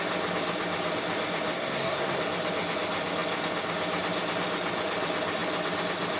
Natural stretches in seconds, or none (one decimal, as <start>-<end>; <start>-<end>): 0.0-1.5; 2.2-6.2